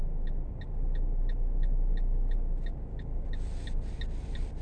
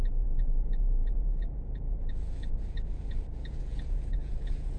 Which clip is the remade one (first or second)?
second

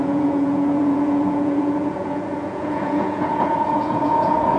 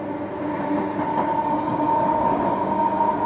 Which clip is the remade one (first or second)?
first